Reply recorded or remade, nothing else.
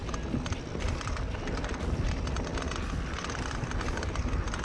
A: recorded